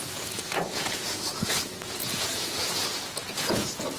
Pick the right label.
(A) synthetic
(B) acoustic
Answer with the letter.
A